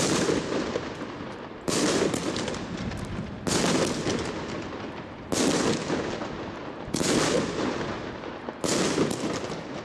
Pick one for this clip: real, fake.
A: real